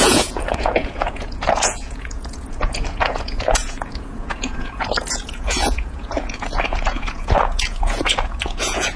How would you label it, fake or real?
fake